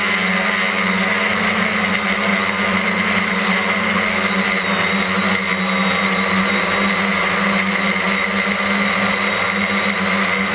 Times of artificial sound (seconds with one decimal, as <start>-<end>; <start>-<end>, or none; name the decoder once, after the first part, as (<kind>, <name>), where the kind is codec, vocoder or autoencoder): none